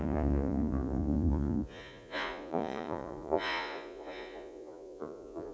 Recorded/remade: remade